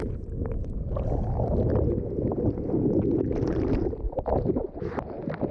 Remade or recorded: recorded